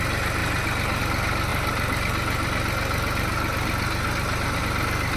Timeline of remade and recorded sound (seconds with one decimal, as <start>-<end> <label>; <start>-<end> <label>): 0.0-5.2 recorded